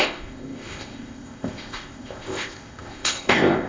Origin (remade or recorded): remade